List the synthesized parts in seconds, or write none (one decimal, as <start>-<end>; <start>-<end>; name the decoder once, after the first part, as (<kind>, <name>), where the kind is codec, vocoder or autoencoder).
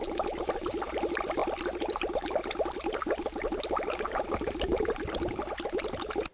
none